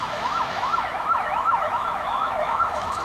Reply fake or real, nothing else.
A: fake